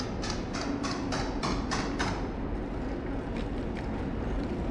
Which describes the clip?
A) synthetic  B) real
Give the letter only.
B